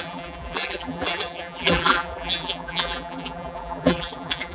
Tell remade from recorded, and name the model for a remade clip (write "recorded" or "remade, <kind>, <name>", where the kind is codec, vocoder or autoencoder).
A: remade, vocoder, BigVGAN v2